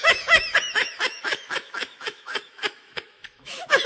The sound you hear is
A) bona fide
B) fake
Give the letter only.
B